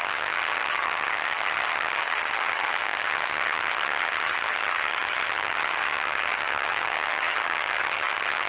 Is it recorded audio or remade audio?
remade